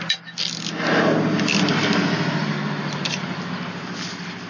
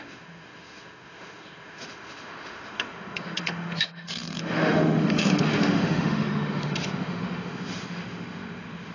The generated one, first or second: second